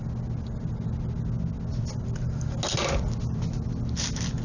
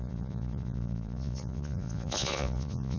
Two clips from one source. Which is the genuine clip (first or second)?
first